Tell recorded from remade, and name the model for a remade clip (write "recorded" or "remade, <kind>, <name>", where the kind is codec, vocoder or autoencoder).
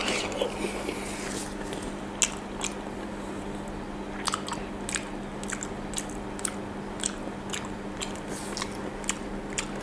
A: recorded